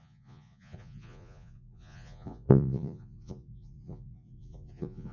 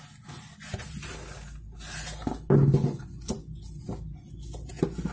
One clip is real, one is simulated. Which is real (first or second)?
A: second